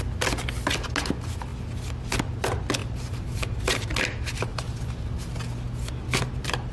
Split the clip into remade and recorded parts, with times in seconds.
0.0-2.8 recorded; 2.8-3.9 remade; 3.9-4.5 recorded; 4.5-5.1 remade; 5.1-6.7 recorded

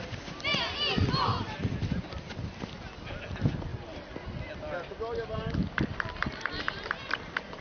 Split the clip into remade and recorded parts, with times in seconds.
0.0-1.3 recorded; 1.3-2.3 remade; 2.3-3.7 recorded; 3.7-4.3 remade; 4.3-5.6 recorded; 5.6-7.6 remade

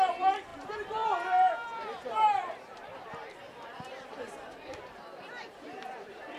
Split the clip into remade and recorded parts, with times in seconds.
0.0-6.4 remade

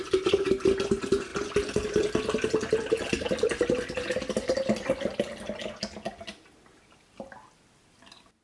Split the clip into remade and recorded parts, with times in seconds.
0.0-8.4 recorded

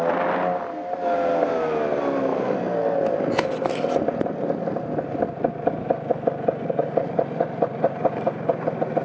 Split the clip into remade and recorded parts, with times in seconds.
0.0-2.3 recorded; 2.3-6.1 remade; 6.1-6.8 recorded; 6.8-7.9 remade; 7.9-9.0 recorded

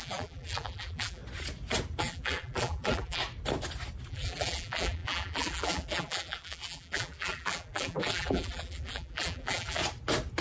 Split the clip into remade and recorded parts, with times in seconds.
0.0-1.2 remade; 1.2-2.0 recorded; 2.0-3.2 remade; 3.2-4.1 recorded; 4.1-9.8 remade; 9.8-10.4 recorded

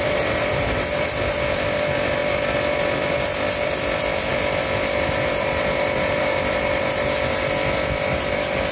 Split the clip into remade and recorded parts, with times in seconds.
0.0-8.7 remade

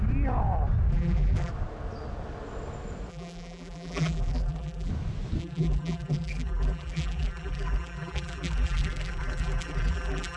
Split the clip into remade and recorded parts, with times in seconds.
0.0-0.9 recorded; 0.9-1.5 remade; 1.5-3.1 recorded; 3.1-4.9 remade; 4.9-5.4 recorded; 5.4-10.4 remade